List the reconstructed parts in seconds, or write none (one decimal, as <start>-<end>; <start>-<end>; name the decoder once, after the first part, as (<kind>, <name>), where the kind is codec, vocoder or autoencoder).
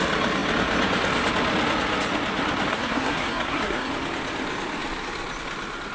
2.7-3.9 (codec, SNAC)